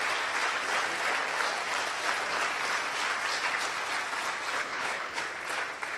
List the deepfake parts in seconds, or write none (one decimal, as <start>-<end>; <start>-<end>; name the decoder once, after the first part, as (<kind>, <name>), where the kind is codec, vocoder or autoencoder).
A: 4.6-5.2 (codec, HILCodec)